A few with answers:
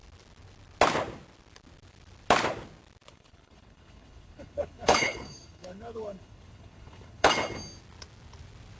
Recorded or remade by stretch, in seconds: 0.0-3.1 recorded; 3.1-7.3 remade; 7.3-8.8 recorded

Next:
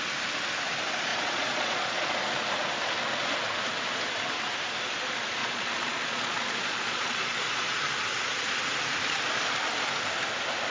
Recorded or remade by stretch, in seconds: 0.0-1.1 recorded; 1.1-2.1 remade; 2.1-5.4 recorded; 5.4-7.8 remade; 7.8-10.7 recorded

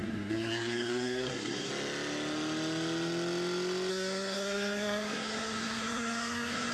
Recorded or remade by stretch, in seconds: 0.0-1.7 remade; 1.7-3.9 recorded; 3.9-6.7 remade

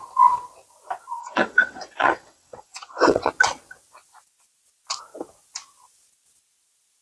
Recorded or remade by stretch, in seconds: 0.0-1.2 recorded; 1.2-3.3 remade; 3.3-7.0 recorded